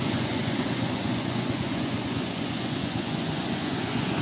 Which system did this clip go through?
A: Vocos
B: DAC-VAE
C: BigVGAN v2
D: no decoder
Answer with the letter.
A